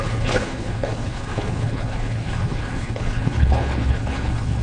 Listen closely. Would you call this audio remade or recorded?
remade